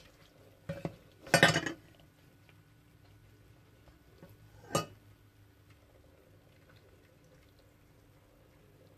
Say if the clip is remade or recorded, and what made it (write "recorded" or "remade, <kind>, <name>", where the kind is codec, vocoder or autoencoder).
recorded